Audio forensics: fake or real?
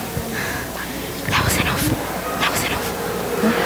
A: real